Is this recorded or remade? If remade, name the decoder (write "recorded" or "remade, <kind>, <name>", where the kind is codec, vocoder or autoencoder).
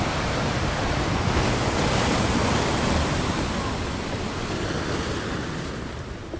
recorded